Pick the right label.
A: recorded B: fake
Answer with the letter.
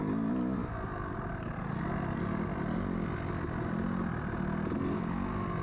A